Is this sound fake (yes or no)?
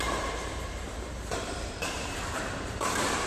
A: yes